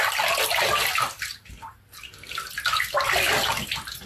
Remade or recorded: recorded